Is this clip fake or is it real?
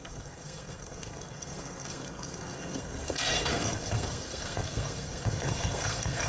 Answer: fake